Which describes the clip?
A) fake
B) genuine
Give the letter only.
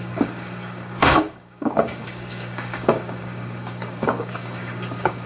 A